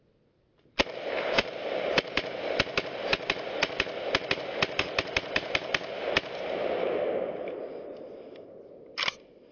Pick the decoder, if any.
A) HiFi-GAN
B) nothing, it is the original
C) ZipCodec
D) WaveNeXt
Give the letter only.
B